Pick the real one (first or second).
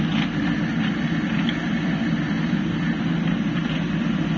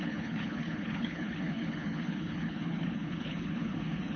first